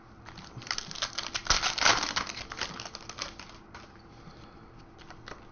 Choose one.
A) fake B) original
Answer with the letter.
B